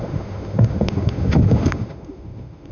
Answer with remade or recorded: remade